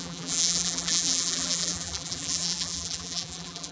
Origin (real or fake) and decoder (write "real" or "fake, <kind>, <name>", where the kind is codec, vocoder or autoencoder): fake, vocoder, BigVGAN v2